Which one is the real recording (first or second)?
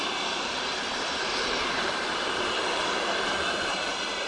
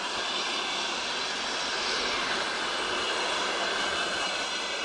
second